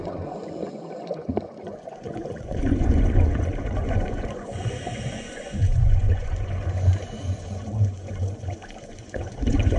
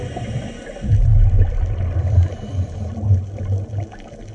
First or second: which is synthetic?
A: first